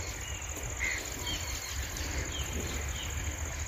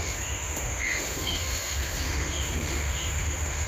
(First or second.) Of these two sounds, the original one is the first